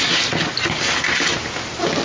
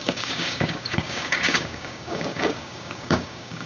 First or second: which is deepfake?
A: second